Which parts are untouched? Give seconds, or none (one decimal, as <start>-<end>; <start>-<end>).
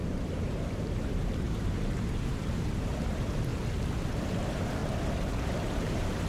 3.5-4.2; 4.8-5.4